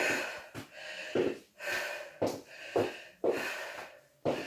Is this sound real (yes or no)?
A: yes